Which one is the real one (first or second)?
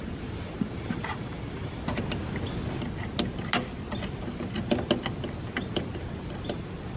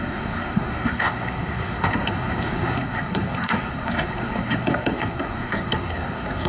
first